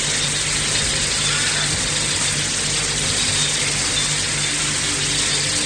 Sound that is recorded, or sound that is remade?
recorded